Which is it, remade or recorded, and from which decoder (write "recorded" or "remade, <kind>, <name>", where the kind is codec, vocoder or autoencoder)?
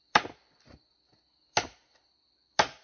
recorded